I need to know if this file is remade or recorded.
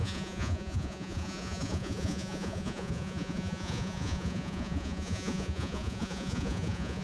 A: remade